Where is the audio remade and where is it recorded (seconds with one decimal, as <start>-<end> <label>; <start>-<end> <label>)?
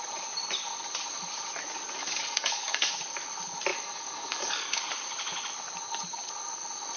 0.0-2.0 recorded; 2.0-2.9 remade; 2.9-3.7 recorded; 3.7-4.8 remade; 4.8-7.0 recorded